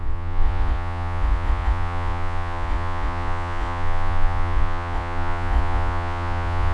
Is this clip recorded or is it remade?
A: remade